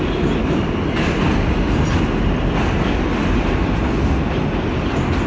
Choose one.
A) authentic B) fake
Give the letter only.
A